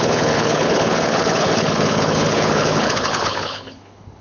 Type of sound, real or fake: fake